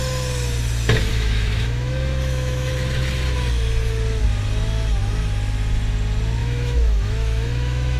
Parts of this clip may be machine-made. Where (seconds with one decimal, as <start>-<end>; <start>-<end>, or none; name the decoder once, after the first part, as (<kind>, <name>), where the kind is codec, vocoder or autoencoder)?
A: 1.1-2.7 (autoencoder, DAC-VAE); 6.4-8.0